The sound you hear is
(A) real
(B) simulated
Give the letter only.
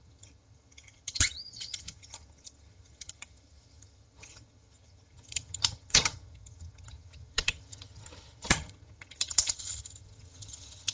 B